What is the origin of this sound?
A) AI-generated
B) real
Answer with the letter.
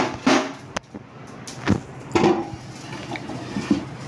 B